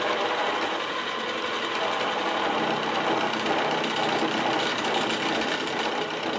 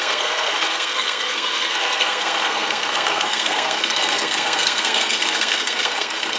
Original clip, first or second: first